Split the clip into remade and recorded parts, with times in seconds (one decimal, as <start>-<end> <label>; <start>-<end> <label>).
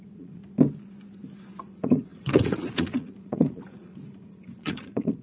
0.0-0.4 remade; 0.4-1.6 recorded; 1.6-5.2 remade